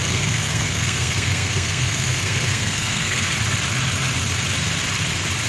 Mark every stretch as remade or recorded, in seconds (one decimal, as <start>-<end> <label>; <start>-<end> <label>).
0.0-3.3 remade; 3.3-5.5 recorded